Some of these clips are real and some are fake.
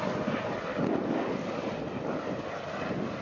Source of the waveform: real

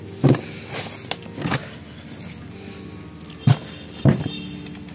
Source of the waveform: real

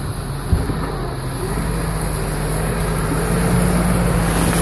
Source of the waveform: real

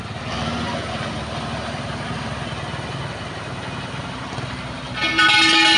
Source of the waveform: real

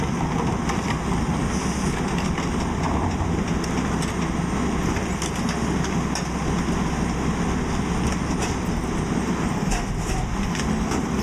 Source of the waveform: real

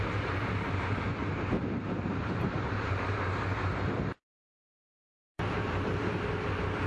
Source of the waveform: fake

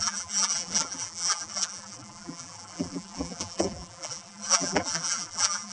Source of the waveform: fake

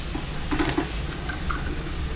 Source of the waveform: real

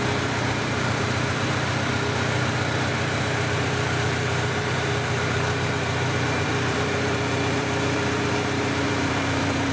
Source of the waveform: fake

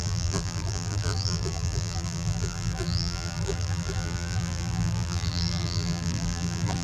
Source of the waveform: fake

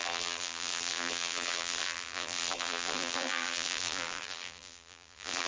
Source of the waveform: fake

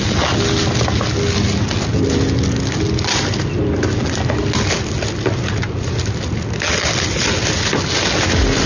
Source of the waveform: real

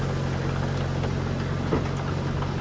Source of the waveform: real